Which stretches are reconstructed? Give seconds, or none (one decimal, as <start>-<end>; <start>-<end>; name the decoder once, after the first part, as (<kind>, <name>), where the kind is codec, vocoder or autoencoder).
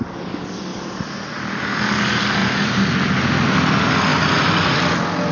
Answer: 0.7-1.8 (vocoder, BigVGAN v2); 2.4-2.9; 4.1-4.7